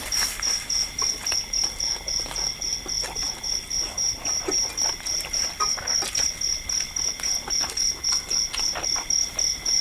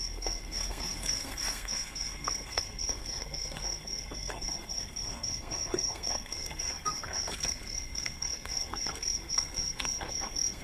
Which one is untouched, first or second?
first